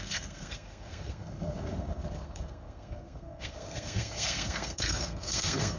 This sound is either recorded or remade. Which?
remade